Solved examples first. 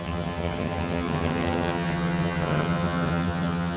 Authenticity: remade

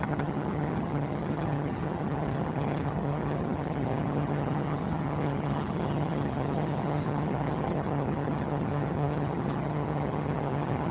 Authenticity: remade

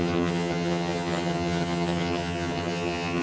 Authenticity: remade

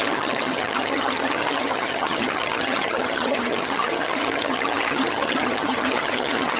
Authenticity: remade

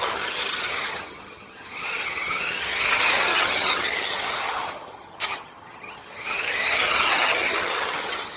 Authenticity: remade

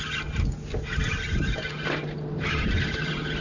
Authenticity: recorded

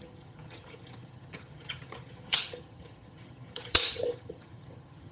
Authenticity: remade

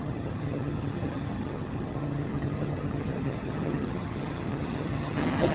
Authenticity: remade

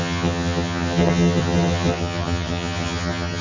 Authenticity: remade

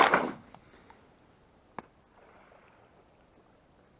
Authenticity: recorded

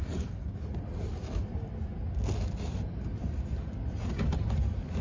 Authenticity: recorded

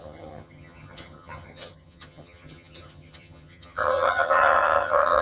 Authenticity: remade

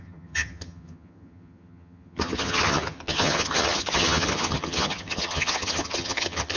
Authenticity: remade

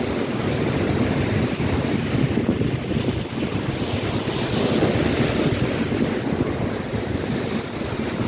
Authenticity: recorded